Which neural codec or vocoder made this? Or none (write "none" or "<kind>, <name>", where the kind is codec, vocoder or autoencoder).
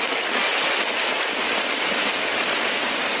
none